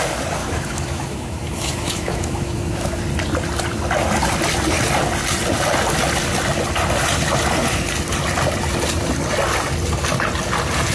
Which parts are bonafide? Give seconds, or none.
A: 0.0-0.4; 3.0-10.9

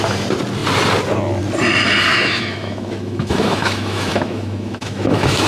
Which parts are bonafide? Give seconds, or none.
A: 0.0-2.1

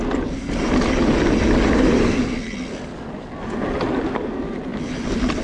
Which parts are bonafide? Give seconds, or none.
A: 0.0-5.4

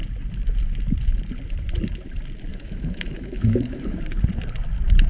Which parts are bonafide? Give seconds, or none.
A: 0.0-2.5; 4.0-5.1

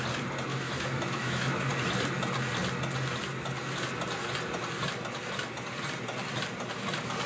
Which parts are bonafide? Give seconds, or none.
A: 0.0-0.5; 1.7-7.3